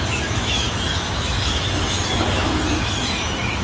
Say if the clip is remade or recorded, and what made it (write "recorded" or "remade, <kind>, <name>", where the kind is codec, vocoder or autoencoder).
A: remade, autoencoder, DAC-VAE